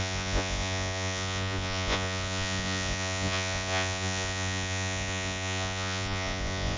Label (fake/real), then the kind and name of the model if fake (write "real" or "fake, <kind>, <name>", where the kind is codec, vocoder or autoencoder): fake, vocoder, Vocos